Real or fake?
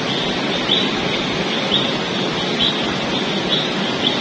real